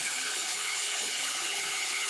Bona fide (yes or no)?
no